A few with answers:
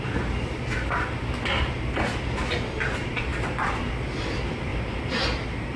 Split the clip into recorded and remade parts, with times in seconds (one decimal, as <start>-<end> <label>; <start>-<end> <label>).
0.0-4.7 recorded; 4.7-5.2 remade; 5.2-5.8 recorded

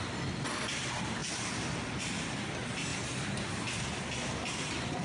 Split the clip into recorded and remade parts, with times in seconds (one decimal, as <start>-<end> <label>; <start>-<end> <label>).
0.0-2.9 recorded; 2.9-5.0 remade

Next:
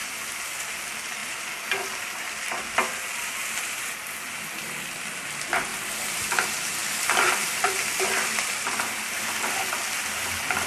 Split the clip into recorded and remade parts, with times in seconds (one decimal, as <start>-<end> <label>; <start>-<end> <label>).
0.0-0.6 remade; 0.6-1.2 recorded; 1.2-3.6 remade; 3.6-6.8 recorded; 6.8-9.7 remade; 9.7-10.7 recorded